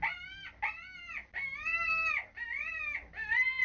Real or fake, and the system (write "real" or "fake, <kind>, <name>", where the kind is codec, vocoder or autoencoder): real